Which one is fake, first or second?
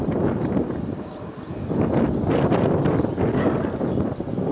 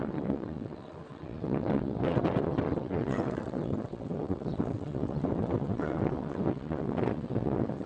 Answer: second